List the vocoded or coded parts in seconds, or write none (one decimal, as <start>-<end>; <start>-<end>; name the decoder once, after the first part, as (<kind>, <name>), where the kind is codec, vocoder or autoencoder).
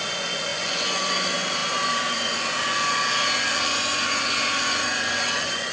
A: 0.0-5.7 (vocoder, Vocos)